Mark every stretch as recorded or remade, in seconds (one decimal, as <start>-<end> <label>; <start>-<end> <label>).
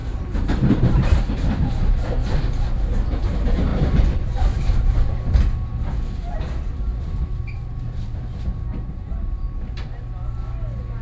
0.0-1.2 remade; 1.2-6.9 recorded; 6.9-8.4 remade; 8.4-11.0 recorded